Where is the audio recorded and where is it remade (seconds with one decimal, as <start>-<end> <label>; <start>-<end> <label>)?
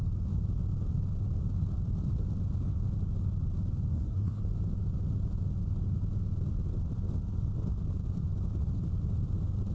0.0-3.9 recorded; 3.9-4.4 remade; 4.4-9.7 recorded